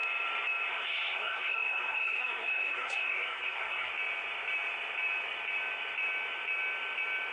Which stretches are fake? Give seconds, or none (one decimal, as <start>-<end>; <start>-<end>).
0.7-3.9